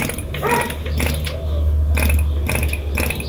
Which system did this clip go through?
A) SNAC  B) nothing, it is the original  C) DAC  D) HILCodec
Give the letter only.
B